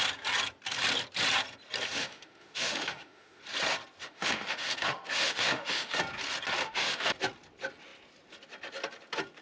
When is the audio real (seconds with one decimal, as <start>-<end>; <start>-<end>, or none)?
0.0-2.0; 3.4-4.0; 6.0-6.6; 7.1-9.4